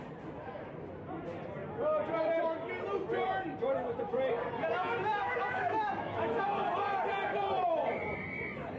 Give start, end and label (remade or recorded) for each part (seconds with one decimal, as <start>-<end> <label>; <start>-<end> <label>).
0.0-5.1 recorded; 5.1-6.4 remade; 6.4-8.8 recorded